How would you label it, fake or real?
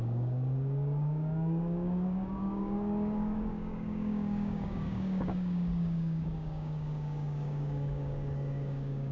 fake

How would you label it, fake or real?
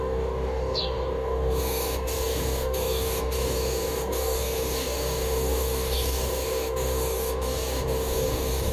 fake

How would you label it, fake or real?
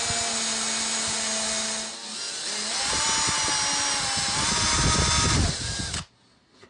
real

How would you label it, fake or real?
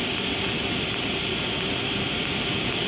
real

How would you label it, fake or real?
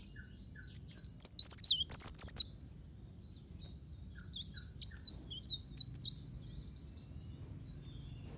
real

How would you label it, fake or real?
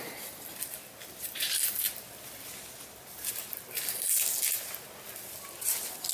real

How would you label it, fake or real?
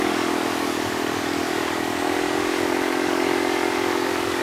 fake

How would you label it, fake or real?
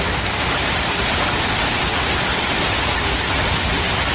real